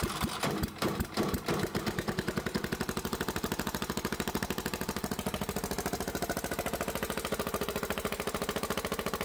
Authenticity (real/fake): real